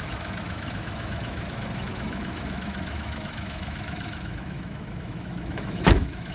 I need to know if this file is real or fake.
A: fake